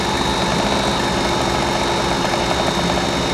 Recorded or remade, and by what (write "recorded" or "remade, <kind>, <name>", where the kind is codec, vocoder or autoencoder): recorded